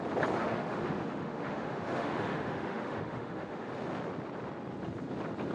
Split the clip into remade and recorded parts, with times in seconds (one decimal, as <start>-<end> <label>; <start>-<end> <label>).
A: 0.0-0.4 recorded; 0.4-3.7 remade; 3.7-5.5 recorded